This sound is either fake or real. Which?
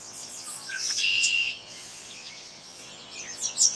fake